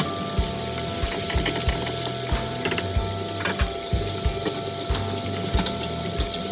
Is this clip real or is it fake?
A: real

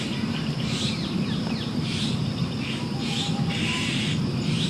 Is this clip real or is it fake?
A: fake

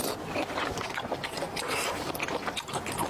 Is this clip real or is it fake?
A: real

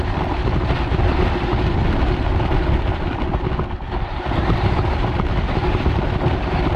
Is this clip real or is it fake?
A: real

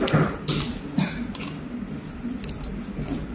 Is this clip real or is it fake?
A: real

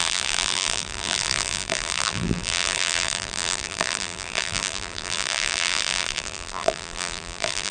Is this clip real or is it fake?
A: fake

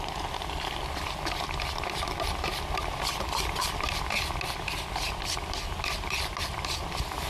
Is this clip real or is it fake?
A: real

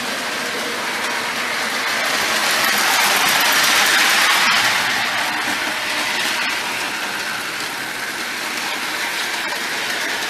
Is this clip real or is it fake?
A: real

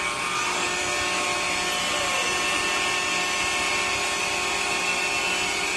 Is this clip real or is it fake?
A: real